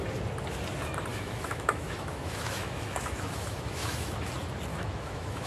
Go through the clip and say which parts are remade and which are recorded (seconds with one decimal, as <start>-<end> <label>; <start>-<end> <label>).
0.0-1.1 recorded; 1.1-4.3 remade; 4.3-4.7 recorded; 4.7-5.5 remade